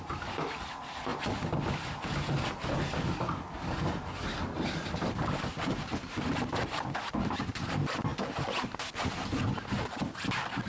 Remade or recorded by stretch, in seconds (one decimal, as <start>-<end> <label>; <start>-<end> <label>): 0.0-10.7 recorded